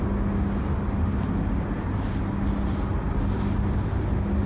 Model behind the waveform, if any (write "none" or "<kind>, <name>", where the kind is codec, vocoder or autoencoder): none